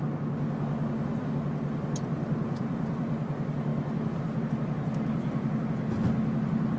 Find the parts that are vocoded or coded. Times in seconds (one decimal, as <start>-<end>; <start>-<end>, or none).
none